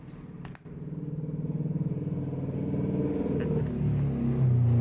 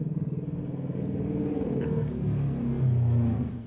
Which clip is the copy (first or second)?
second